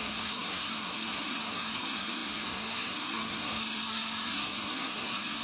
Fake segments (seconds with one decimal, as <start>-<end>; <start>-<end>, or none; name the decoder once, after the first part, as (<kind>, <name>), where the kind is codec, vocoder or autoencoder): 0.0-5.4 (codec, SNAC)